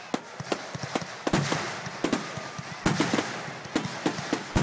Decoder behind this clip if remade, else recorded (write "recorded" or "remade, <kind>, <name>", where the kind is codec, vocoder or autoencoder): recorded